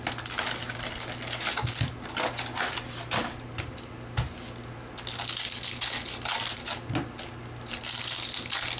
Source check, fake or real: real